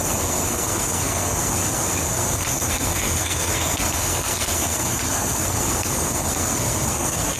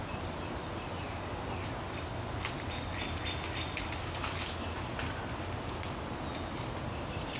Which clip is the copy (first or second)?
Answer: first